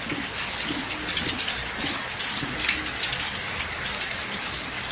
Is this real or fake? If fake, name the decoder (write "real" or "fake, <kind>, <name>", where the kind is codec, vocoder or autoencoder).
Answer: fake, codec, DAC